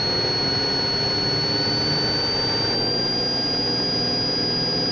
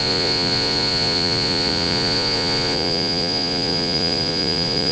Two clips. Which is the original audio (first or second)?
first